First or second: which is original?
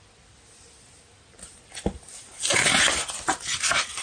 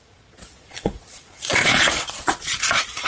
first